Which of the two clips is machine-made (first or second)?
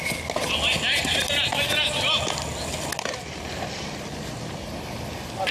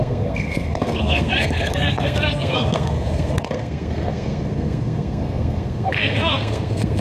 second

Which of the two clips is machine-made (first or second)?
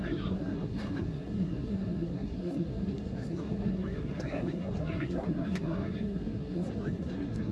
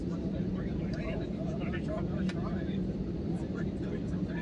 first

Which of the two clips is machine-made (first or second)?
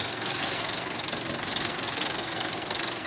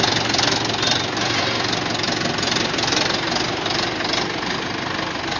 first